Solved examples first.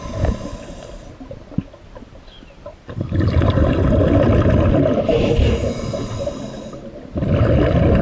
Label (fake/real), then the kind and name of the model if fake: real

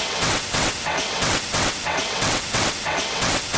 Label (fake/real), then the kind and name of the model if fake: fake, vocoder, WaveNeXt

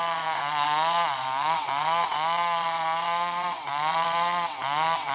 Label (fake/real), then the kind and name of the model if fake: fake, vocoder, WaveNeXt